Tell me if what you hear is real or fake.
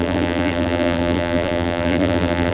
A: fake